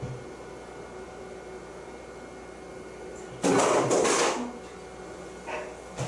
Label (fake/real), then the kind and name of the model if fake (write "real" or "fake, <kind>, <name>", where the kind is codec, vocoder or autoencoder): real